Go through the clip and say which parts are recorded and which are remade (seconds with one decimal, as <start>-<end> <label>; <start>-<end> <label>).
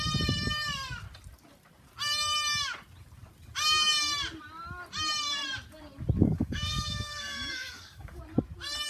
0.0-6.2 recorded; 6.2-8.2 remade; 8.2-8.9 recorded